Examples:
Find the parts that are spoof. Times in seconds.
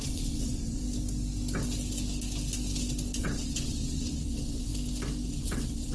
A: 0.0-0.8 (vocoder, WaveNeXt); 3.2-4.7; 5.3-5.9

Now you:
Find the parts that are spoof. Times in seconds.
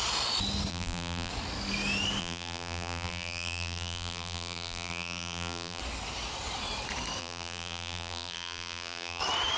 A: 0.7-1.3 (vocoder, BigVGAN v2); 2.2-5.8; 7.2-9.2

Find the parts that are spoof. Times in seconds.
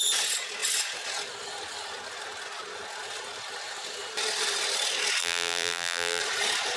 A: 5.2-6.2 (vocoder, BigVGAN v2)